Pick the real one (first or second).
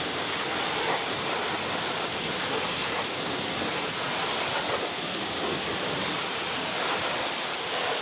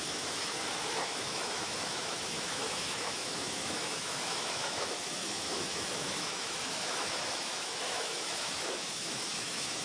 first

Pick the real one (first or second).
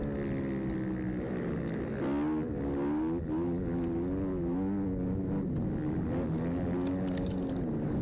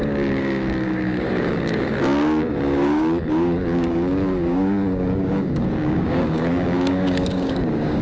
first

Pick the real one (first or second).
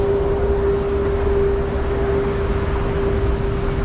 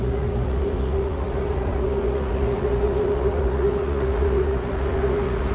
first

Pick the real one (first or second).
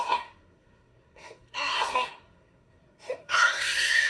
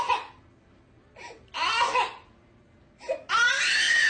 second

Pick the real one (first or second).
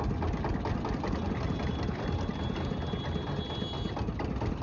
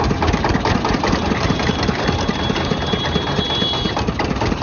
first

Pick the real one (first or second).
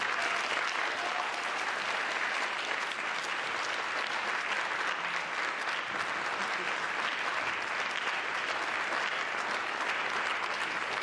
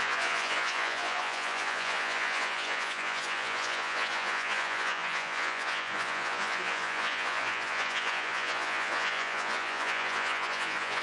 first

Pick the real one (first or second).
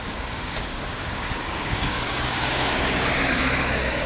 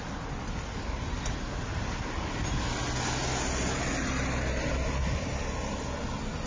second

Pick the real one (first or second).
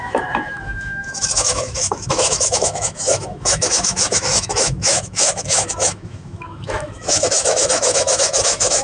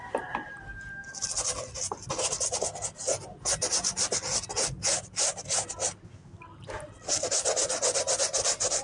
second